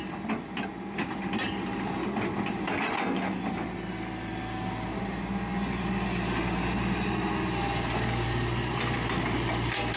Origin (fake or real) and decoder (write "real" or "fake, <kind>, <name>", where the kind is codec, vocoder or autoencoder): real